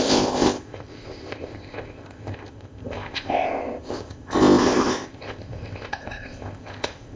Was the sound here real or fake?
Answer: fake